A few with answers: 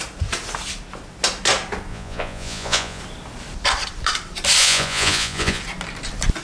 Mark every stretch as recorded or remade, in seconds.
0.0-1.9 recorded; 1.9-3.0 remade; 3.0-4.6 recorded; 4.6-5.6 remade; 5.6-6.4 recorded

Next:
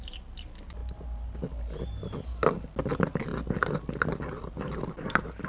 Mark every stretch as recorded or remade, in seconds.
0.0-5.5 recorded

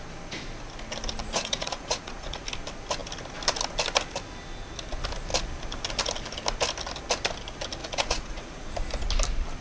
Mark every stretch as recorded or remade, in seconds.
0.0-1.2 recorded; 1.2-2.4 remade; 2.4-7.8 recorded; 7.8-8.7 remade; 8.7-9.6 recorded

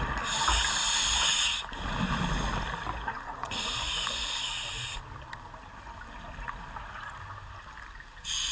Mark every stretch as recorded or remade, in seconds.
0.0-3.4 recorded; 3.4-4.4 remade; 4.4-8.5 recorded

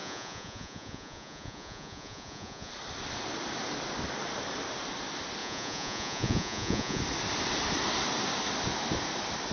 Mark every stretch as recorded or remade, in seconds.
0.0-2.7 remade; 2.7-5.4 recorded; 5.4-7.0 remade; 7.0-9.5 recorded

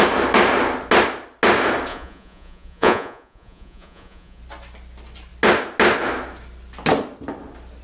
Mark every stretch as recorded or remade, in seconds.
0.0-1.9 recorded; 1.9-4.4 remade; 4.4-7.8 recorded

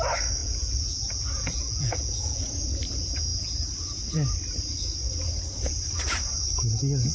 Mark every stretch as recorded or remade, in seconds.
0.0-0.4 recorded; 0.4-2.5 remade; 2.5-7.1 recorded

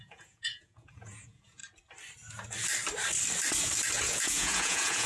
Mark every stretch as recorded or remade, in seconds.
0.0-1.6 remade; 1.6-4.0 recorded; 4.0-5.1 remade